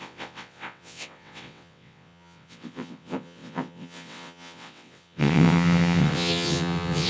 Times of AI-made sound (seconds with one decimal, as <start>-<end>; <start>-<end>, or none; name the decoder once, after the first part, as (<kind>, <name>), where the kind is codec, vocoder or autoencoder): 0.0-7.1 (vocoder, WaveNeXt)